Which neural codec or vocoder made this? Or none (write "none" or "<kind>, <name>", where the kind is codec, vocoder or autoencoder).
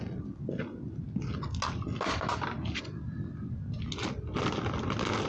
none